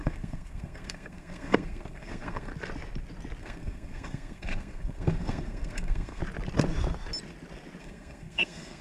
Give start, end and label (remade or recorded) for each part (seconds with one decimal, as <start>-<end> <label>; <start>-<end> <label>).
0.0-2.5 remade; 2.5-3.4 recorded; 3.4-6.2 remade; 6.2-7.8 recorded; 7.8-8.8 remade